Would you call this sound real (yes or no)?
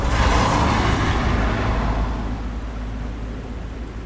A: yes